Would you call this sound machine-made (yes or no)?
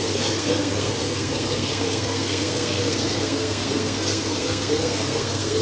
yes